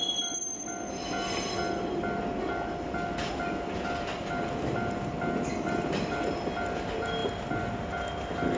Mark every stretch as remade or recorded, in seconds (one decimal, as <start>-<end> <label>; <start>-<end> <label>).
0.0-8.6 recorded